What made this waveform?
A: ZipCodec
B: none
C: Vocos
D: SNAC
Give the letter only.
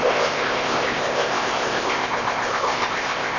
A